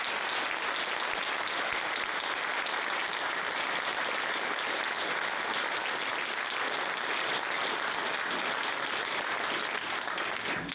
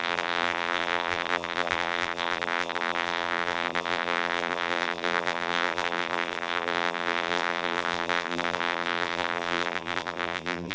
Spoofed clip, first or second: second